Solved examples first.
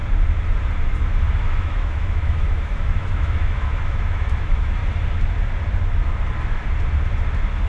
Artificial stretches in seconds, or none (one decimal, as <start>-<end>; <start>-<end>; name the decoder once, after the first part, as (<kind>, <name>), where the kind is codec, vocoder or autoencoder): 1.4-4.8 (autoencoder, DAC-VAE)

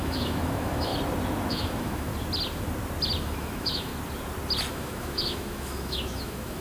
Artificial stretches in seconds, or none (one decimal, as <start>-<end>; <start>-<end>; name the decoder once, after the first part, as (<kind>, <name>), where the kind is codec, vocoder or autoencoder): 0.0-0.9 (autoencoder, DAC-VAE); 1.5-2.1; 3.2-3.9; 4.7-6.6

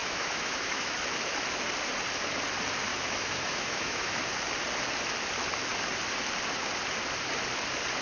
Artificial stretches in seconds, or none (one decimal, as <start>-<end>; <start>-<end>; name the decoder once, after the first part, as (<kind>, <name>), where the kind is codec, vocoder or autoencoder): 0.0-1.0 (autoencoder, DAC-VAE); 2.9-4.2

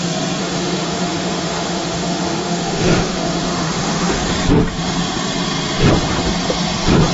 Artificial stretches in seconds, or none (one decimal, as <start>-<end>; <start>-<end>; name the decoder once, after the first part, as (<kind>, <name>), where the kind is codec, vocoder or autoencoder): 0.4-4.2 (autoencoder, DAC-VAE)

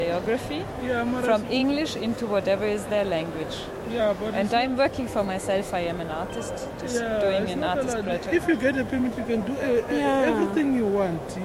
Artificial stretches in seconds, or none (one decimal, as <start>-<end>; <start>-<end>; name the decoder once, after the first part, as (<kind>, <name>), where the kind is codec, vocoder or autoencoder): 0.7-6.1 (autoencoder, DAC-VAE); 8.1-11.4